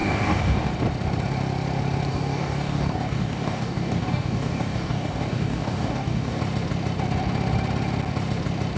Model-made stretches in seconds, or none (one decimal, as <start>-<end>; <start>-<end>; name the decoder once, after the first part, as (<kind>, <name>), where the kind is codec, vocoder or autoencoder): 0.0-0.7 (codec, DAC); 2.1-6.4